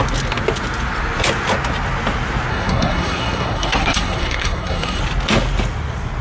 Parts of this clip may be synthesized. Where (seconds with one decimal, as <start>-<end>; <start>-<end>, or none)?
2.5-5.0